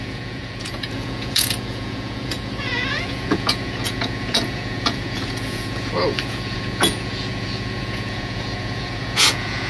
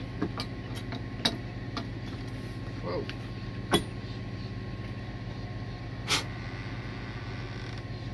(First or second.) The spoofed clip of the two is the first